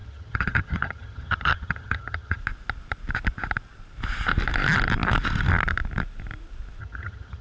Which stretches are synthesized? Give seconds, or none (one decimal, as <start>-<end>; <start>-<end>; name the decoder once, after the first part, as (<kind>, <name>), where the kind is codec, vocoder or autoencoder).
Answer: 0.0-2.4 (vocoder, HiFi-GAN); 6.8-7.4